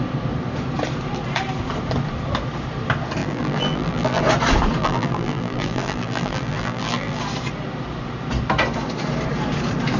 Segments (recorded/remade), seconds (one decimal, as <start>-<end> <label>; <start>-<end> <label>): 0.0-3.2 recorded; 3.2-4.2 remade; 4.2-4.8 recorded; 4.8-7.2 remade; 7.2-10.0 recorded